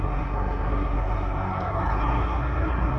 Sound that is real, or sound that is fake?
fake